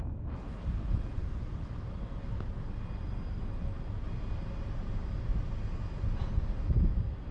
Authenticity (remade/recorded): recorded